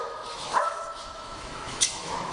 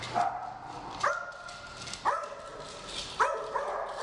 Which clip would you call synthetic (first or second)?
first